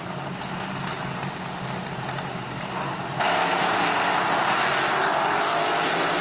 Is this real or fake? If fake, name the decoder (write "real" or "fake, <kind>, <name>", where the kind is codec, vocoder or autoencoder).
real